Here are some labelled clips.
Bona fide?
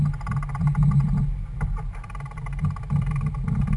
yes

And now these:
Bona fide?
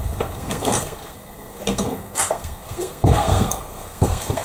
no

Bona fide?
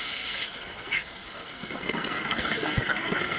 no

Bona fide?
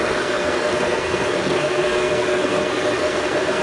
no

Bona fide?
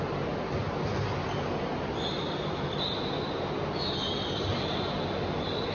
yes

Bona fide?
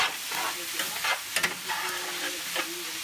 yes